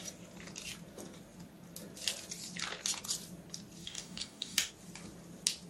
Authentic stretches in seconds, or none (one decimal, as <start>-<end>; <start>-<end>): 0.0-3.8; 4.7-5.7